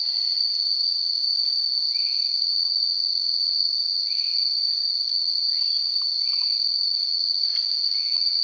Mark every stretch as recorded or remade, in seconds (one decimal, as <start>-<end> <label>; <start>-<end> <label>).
0.0-1.2 remade; 1.2-1.9 recorded; 1.9-4.4 remade; 4.4-4.9 recorded; 4.9-5.6 remade; 5.6-6.7 recorded; 6.7-8.4 remade